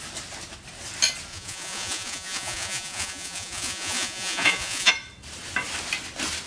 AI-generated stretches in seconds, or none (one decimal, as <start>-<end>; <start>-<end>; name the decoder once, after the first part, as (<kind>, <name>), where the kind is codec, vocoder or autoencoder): 1.3-4.9 (vocoder, Vocos)